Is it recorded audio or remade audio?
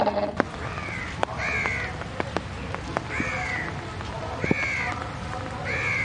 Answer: recorded